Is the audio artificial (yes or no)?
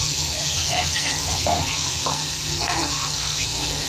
yes